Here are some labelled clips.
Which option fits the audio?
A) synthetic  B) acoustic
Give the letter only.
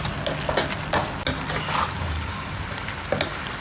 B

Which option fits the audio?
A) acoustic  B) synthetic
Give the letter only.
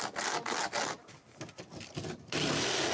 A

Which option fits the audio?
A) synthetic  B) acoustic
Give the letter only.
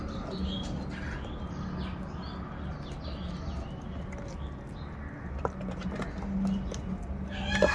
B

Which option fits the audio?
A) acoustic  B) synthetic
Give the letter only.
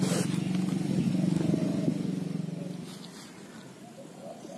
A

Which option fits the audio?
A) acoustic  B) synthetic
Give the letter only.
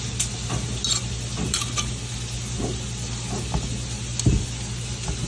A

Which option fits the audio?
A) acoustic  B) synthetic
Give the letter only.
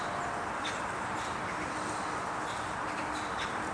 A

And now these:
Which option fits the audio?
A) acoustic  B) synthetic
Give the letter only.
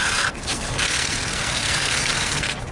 B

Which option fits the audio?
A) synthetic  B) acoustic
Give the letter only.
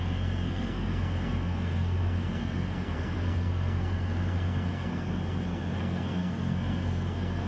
A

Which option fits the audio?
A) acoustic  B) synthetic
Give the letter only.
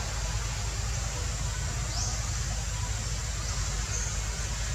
A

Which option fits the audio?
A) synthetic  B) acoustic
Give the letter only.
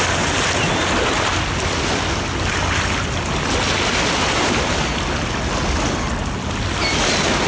B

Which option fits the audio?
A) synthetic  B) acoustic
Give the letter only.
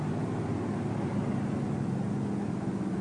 B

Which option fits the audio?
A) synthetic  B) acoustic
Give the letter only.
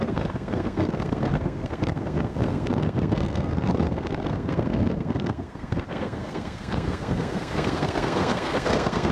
A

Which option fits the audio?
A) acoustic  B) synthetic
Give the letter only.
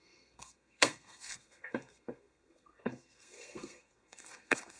B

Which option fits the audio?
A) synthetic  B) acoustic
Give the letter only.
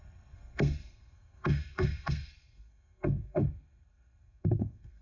A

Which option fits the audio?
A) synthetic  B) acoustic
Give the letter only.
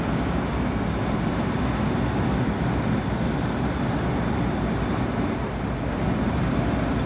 B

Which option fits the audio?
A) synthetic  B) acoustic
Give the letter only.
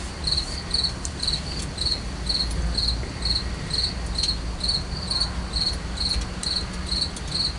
B